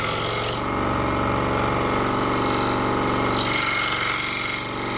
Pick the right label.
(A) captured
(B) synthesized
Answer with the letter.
A